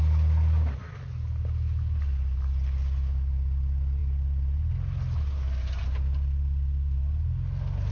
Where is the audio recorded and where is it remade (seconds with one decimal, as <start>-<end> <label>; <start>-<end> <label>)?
0.0-7.9 recorded